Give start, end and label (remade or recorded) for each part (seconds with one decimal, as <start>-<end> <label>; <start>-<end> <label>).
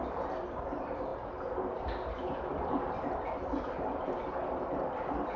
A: 0.0-5.4 recorded